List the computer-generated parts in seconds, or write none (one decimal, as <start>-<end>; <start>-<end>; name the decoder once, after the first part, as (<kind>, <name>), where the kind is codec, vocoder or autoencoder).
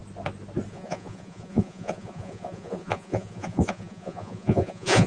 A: 0.7-5.1 (vocoder, Vocos)